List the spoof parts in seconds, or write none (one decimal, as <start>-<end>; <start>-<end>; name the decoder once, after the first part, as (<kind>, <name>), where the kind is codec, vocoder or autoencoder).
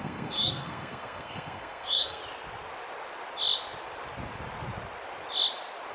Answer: 0.0-2.2 (codec, SNAC)